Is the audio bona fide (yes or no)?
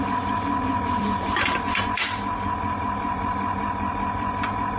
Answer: no